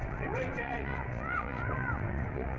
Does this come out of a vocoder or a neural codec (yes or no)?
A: yes